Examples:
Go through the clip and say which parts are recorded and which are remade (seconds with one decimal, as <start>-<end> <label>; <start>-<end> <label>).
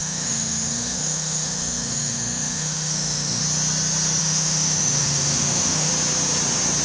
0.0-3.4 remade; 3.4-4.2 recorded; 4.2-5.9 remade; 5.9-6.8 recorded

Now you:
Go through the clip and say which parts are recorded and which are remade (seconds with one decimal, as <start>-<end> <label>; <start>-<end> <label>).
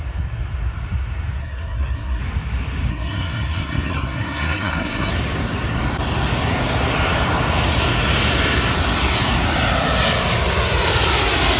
0.0-1.4 recorded; 1.4-2.2 remade; 2.2-2.9 recorded; 2.9-5.1 remade; 5.1-11.6 recorded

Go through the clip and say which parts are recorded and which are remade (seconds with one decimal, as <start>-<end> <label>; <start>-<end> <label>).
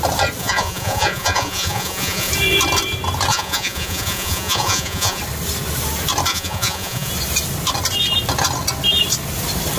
0.0-0.4 recorded; 0.4-2.3 remade; 2.3-3.3 recorded; 3.3-5.2 remade; 5.2-6.3 recorded; 6.3-7.1 remade; 7.1-9.8 recorded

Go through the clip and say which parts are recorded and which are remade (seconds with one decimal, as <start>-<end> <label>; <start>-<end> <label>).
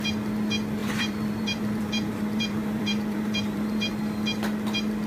0.0-0.8 recorded; 0.8-3.9 remade; 3.9-5.1 recorded